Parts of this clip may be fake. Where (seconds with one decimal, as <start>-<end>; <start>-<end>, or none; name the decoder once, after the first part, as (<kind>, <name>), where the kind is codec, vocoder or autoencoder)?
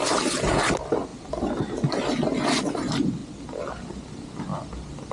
none